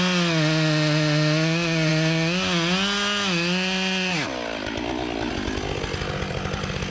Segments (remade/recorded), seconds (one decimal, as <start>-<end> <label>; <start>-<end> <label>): 0.0-6.9 recorded